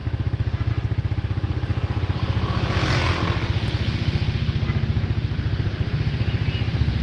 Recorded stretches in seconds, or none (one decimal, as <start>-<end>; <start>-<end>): 0.0-7.0